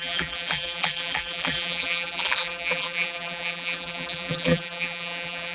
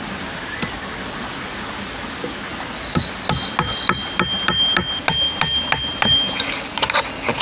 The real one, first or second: second